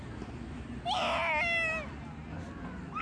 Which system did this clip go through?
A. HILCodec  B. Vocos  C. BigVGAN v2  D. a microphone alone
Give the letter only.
D